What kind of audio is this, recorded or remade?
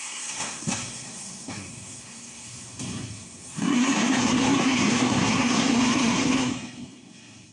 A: remade